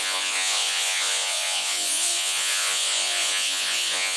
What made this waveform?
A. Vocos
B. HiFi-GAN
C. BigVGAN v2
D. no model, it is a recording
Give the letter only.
A